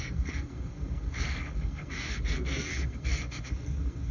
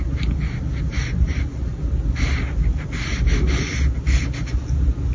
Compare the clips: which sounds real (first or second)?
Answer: second